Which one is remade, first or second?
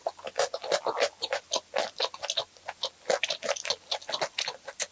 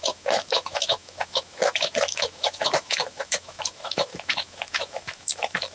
second